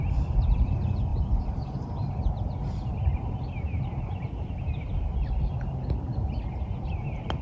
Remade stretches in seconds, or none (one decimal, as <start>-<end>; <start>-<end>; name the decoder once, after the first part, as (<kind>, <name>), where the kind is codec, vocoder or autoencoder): none